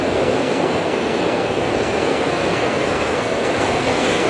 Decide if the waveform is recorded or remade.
remade